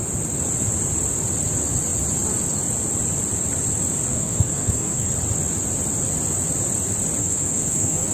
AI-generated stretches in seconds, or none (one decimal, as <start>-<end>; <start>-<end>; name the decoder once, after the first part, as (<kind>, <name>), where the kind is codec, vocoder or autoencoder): 4.1-5.1 (codec, SNAC); 7.2-8.1